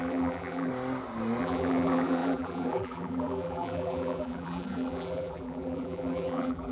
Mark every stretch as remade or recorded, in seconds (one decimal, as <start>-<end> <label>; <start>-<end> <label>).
0.0-0.7 remade; 0.7-1.4 recorded; 1.4-6.7 remade